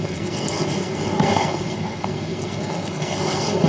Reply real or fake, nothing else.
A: fake